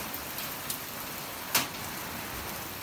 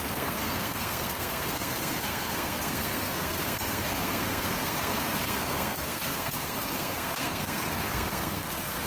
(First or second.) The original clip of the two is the first